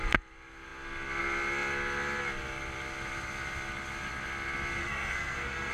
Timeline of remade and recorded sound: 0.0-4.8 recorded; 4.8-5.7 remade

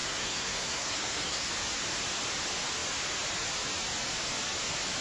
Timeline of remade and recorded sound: 0.0-1.5 remade; 1.5-5.0 recorded

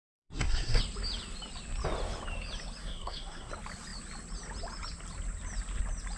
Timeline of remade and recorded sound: 0.0-0.8 remade; 0.8-2.8 recorded; 2.8-3.5 remade; 3.5-6.2 recorded

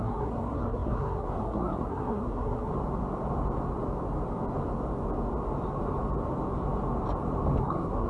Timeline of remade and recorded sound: 0.0-2.7 remade; 2.7-7.6 recorded; 7.6-8.1 remade